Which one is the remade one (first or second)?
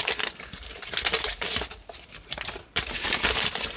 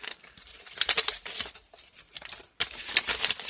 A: second